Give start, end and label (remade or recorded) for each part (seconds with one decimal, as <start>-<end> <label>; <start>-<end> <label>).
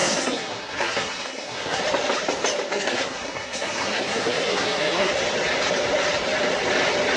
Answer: 0.0-1.8 remade; 1.8-2.7 recorded; 2.7-5.1 remade; 5.1-7.2 recorded